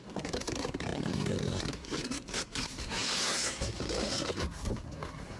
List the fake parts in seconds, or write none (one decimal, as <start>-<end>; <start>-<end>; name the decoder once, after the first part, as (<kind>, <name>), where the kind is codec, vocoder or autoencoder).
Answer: 0.0-5.4 (codec, SNAC)